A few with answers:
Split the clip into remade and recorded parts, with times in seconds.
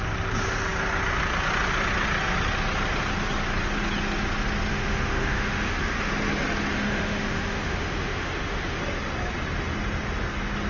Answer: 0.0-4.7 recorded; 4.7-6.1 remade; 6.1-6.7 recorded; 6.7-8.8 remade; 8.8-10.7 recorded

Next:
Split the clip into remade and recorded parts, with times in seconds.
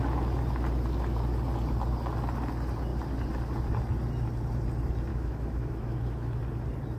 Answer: 0.0-5.1 recorded; 5.1-6.4 remade; 6.4-7.0 recorded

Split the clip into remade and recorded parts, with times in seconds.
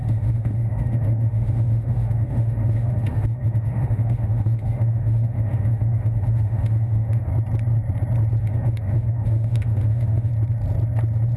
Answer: 0.0-7.3 remade; 7.3-8.4 recorded; 8.4-10.3 remade; 10.3-11.4 recorded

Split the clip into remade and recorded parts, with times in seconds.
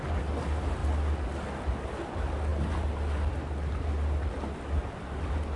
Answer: 0.0-5.6 recorded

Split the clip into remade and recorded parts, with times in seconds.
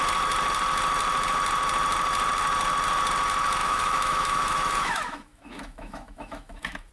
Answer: 0.0-3.6 recorded; 3.6-6.9 remade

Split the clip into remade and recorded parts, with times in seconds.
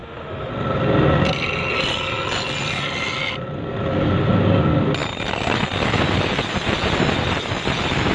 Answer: 0.0-0.5 remade; 0.5-8.1 recorded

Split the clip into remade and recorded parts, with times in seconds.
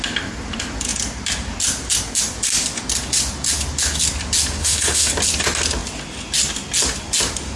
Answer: 0.0-4.6 recorded; 4.6-5.1 remade; 5.1-7.6 recorded